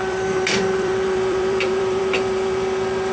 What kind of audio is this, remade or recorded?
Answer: remade